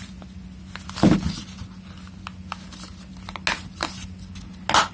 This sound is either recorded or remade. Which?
recorded